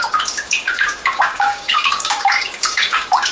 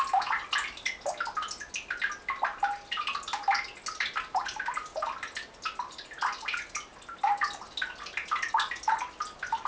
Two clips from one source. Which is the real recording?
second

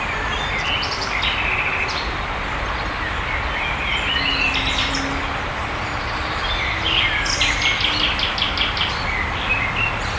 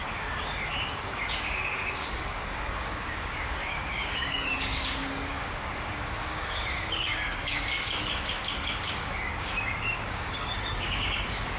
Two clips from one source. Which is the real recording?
first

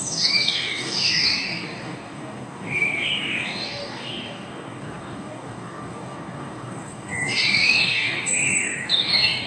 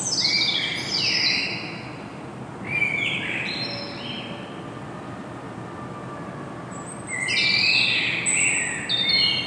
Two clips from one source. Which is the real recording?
second